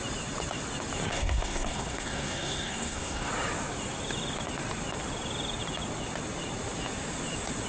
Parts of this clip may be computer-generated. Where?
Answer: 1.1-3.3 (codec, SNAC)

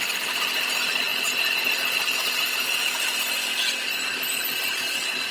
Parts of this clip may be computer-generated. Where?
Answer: none